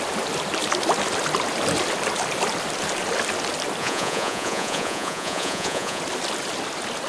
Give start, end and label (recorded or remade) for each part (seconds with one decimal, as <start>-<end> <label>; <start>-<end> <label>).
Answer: 0.0-3.8 recorded; 3.8-6.0 remade; 6.0-7.1 recorded